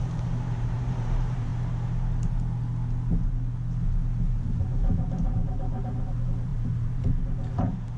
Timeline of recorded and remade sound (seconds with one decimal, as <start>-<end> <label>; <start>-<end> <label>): 0.0-1.5 remade; 1.5-4.3 recorded; 4.3-8.0 remade